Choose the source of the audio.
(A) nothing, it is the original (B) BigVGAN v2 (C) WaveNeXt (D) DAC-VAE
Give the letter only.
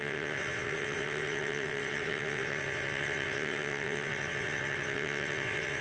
C